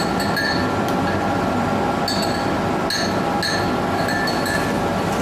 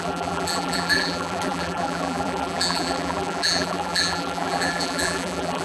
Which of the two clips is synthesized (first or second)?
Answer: second